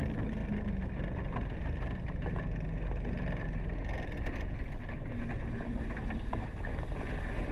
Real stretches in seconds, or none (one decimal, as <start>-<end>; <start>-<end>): 0.0-7.5